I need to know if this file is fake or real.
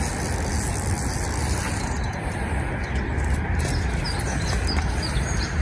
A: real